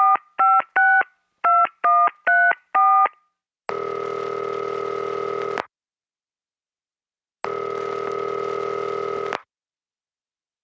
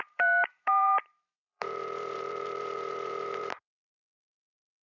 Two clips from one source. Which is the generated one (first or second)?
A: second